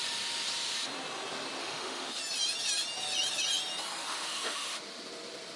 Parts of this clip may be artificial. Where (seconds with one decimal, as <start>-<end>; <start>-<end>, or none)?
1.6-2.2; 4.0-4.8